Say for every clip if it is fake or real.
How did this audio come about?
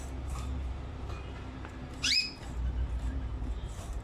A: fake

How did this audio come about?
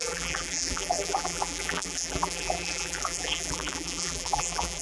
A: fake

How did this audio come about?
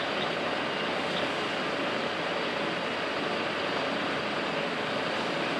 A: real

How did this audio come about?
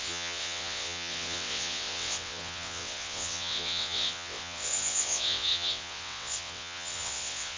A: fake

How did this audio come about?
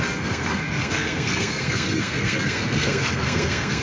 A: fake